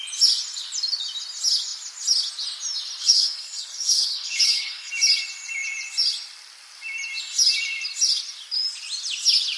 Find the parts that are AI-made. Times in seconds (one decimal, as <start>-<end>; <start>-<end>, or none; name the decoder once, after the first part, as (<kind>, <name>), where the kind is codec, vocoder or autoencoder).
3.0-4.9 (codec, HILCodec)